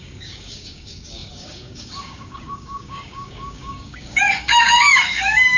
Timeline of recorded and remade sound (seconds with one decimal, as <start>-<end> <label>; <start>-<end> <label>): 0.0-5.6 remade